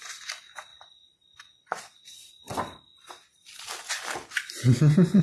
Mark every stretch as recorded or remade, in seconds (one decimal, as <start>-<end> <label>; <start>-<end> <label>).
0.0-5.2 recorded